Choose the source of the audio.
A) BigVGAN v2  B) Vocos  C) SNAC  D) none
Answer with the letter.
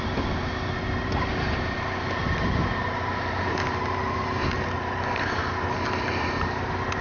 D